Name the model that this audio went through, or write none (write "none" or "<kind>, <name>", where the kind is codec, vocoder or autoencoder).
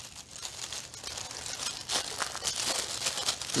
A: none